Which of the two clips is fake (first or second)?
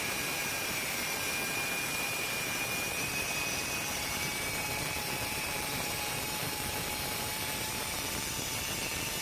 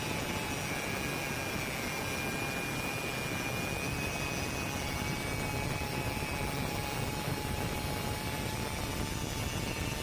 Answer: first